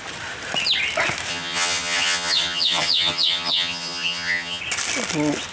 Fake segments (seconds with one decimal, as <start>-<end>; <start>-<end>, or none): 1.3-4.6